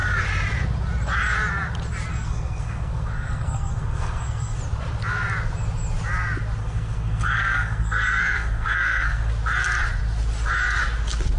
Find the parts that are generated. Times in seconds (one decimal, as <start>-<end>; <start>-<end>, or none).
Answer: 2.1-4.6; 6.6-9.3